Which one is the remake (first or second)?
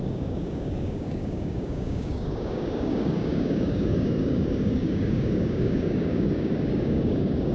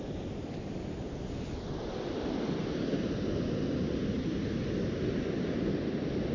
first